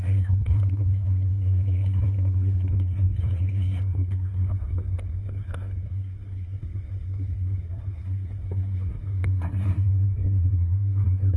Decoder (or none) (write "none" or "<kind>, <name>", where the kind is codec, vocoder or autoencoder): codec, SNAC